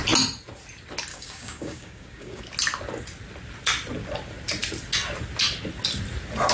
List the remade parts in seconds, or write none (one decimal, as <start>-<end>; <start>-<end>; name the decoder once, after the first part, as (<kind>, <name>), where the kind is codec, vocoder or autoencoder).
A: 1.1-2.4 (codec, DAC)